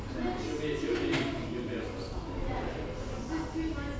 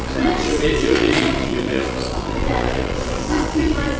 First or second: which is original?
first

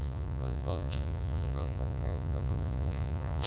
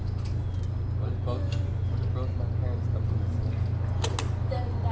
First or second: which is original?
second